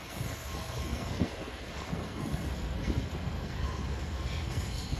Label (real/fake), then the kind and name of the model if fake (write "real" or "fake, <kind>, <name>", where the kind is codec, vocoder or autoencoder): fake, codec, SNAC